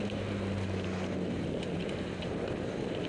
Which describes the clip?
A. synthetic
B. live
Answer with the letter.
B